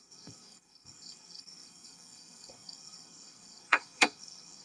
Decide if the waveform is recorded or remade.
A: remade